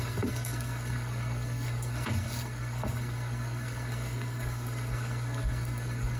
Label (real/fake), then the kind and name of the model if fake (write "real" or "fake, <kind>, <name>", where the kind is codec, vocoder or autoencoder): fake, codec, SNAC